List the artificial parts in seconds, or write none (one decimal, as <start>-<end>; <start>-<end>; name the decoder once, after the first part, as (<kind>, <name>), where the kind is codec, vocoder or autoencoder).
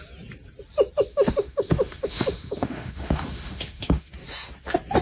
1.1-4.1 (autoencoder, DAC-VAE)